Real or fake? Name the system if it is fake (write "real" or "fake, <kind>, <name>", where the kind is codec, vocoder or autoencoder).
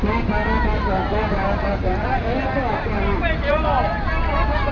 real